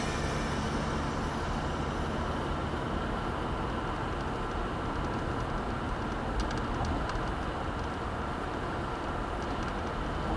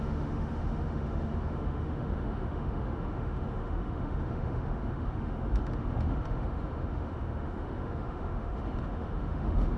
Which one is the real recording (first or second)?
first